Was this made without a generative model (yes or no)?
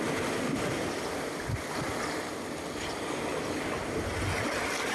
yes